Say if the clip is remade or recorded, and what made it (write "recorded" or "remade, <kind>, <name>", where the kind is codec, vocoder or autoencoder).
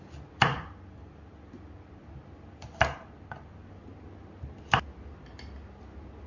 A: recorded